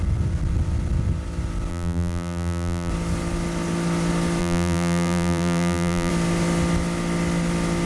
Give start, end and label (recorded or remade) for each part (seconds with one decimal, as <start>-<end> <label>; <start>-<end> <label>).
0.0-1.7 recorded; 1.7-2.9 remade; 2.9-4.4 recorded; 4.4-6.1 remade; 6.1-7.9 recorded